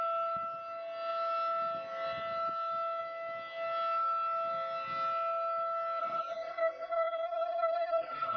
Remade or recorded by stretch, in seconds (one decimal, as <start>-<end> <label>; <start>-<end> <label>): 0.0-6.0 recorded; 6.0-8.4 remade